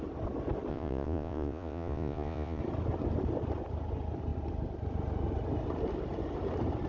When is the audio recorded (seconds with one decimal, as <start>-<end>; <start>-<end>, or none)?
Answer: 0.0-0.7; 2.6-6.9